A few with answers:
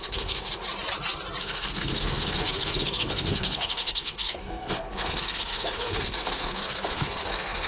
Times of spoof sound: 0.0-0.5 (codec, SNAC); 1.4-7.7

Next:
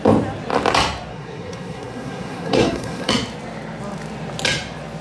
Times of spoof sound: 1.1-3.1 (codec, SNAC)

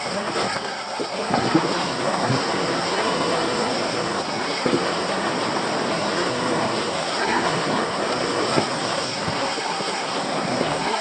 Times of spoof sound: 0.0-5.3 (codec, SNAC); 5.9-11.0

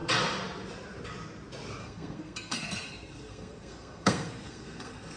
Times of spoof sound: 1.8-5.2 (codec, SNAC)